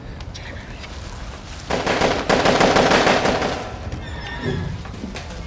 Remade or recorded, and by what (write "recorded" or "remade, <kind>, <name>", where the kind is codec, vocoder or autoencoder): recorded